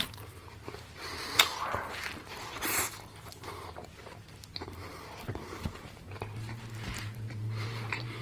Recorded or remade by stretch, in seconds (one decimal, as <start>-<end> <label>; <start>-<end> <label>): 0.0-1.2 remade; 1.2-2.2 recorded; 2.2-8.2 remade